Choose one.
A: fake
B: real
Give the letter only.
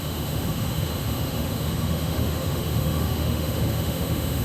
A